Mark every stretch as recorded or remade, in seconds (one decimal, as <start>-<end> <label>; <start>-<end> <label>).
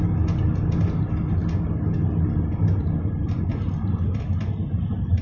0.0-5.2 recorded